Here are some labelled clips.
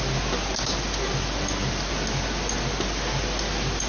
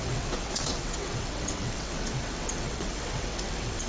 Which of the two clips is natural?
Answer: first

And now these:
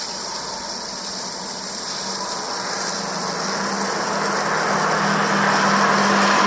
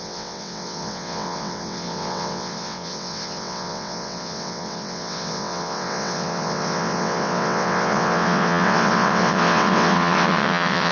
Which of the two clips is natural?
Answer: first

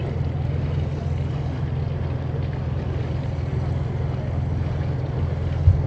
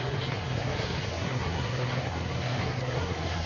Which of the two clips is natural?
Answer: first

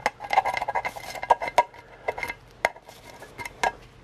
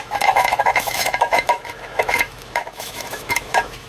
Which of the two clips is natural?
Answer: first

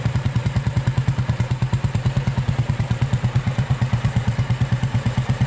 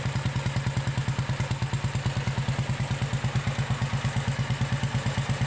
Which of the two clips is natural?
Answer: second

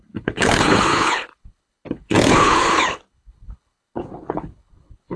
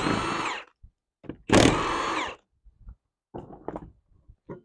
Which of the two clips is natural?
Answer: second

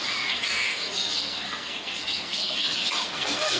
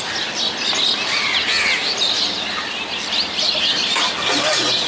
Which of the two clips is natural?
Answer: second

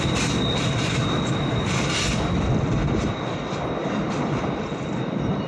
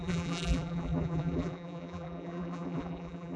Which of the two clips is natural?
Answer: first